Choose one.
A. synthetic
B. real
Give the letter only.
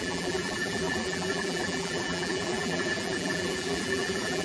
A